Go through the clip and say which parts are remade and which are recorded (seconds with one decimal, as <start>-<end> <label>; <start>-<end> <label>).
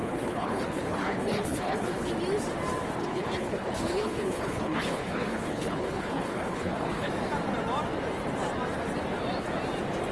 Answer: 0.0-2.1 remade; 2.1-3.0 recorded; 3.0-7.1 remade; 7.1-10.1 recorded